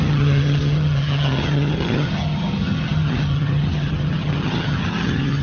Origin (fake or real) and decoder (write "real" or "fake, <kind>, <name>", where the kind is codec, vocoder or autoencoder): fake, vocoder, HiFi-GAN